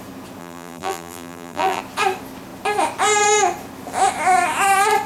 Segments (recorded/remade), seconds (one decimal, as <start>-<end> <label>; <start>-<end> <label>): 0.0-0.4 recorded; 0.4-1.8 remade; 1.8-5.1 recorded